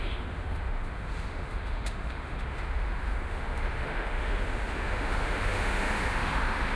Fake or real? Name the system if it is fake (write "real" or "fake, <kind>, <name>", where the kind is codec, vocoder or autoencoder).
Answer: fake, autoencoder, DAC-VAE